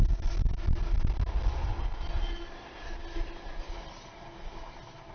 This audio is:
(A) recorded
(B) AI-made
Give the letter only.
A